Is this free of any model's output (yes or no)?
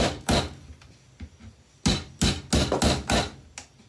yes